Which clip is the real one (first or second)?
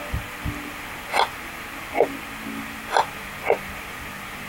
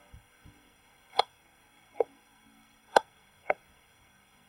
first